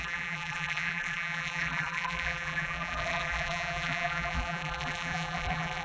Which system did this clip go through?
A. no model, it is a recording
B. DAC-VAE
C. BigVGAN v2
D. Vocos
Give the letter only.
C